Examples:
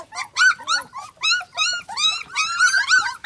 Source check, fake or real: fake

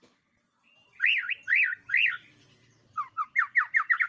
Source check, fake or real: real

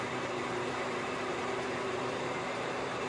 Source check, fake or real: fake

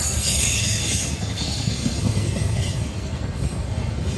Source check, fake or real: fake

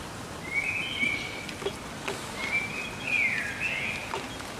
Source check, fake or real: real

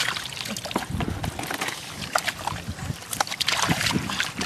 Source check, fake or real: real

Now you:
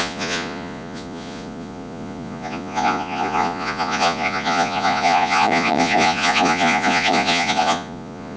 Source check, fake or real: fake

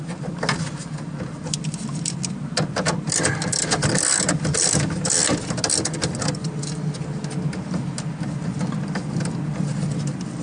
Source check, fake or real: real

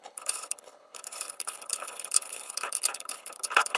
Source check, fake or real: fake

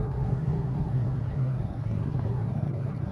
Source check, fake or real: fake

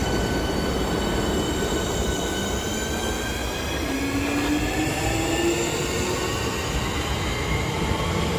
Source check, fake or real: real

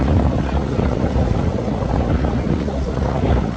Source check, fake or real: fake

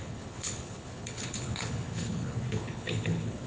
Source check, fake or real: fake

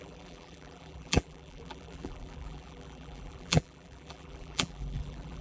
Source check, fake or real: fake